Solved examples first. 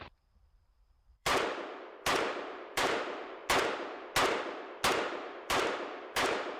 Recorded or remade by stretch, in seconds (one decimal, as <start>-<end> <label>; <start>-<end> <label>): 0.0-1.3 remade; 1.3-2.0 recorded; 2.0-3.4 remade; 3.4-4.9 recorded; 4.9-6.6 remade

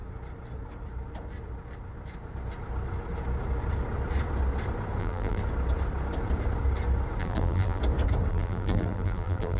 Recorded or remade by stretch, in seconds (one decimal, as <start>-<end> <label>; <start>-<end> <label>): 0.0-5.0 recorded; 5.0-5.4 remade; 5.4-7.2 recorded; 7.2-7.8 remade; 7.8-8.3 recorded; 8.3-9.6 remade

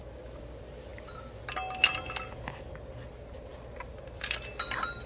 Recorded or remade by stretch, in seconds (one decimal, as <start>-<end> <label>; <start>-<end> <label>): 0.0-3.5 recorded; 3.5-5.1 remade

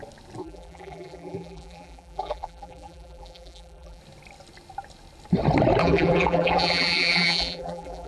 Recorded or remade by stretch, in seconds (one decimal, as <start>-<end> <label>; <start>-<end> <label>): 0.0-0.4 recorded; 0.4-4.0 remade; 4.0-5.8 recorded; 5.8-8.1 remade

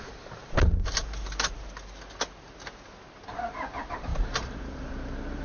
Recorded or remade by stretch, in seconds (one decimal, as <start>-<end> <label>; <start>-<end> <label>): 0.0-0.4 recorded; 0.4-1.7 remade; 1.7-4.1 recorded; 4.1-4.9 remade; 4.9-5.4 recorded

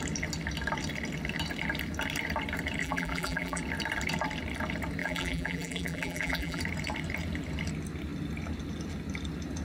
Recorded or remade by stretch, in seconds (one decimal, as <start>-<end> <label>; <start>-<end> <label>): 0.0-2.8 recorded; 2.8-3.6 remade; 3.6-5.0 recorded; 5.0-6.6 remade; 6.6-9.6 recorded